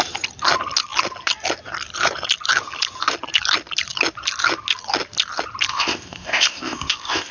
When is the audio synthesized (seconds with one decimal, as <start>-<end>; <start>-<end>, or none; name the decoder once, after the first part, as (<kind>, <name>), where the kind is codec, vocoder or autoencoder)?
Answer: 5.7-7.3 (codec, ZipCodec)